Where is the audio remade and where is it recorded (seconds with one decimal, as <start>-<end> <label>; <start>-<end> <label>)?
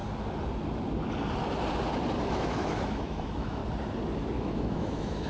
0.0-2.3 recorded; 2.3-3.6 remade; 3.6-4.4 recorded; 4.4-5.3 remade